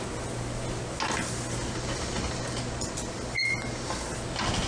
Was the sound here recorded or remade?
recorded